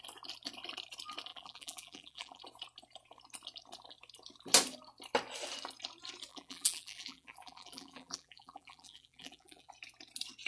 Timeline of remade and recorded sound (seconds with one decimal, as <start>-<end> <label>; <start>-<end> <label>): 0.0-1.3 recorded; 1.3-2.4 remade; 2.4-6.3 recorded; 6.3-9.7 remade; 9.7-10.5 recorded